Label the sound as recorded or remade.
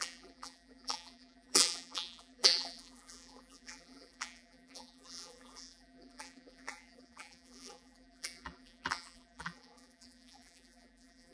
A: remade